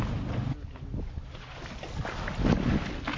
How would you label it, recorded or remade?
recorded